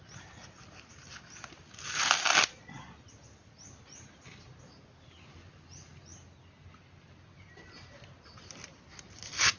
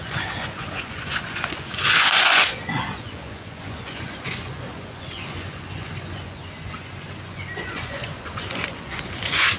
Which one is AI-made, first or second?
second